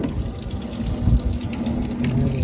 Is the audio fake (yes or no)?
no